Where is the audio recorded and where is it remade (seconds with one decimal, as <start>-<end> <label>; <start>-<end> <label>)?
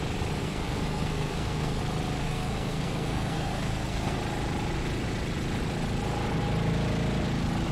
0.0-0.4 recorded; 0.4-1.8 remade; 1.8-2.2 recorded; 2.2-4.2 remade; 4.2-7.7 recorded